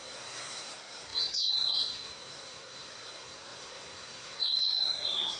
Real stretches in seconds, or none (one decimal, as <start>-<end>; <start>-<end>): none